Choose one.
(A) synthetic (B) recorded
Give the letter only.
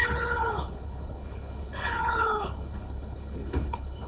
A